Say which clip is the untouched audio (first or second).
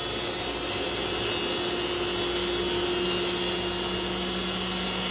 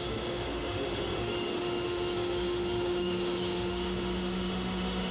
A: first